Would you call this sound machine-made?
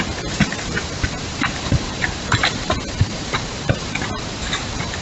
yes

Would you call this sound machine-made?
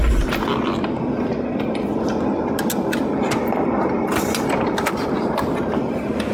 no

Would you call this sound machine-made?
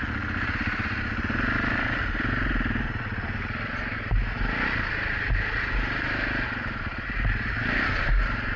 no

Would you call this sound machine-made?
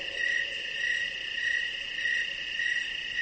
no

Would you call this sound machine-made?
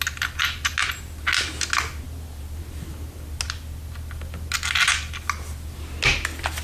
no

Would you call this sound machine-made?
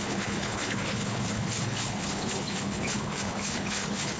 yes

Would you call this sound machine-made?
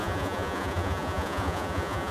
yes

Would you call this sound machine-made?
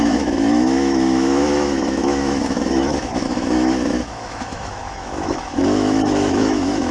yes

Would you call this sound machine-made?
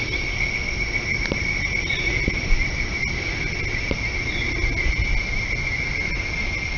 no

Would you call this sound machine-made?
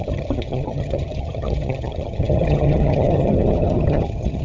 yes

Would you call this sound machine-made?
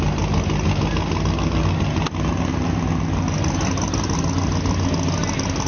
no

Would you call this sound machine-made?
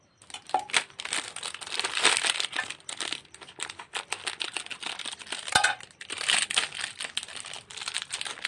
no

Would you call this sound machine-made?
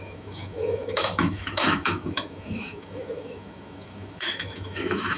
yes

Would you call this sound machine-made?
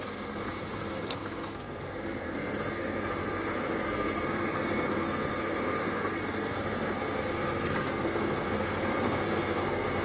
yes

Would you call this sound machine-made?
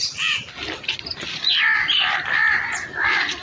no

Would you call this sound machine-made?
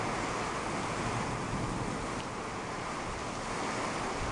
no